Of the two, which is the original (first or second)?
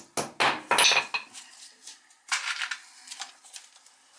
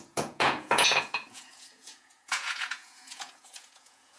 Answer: first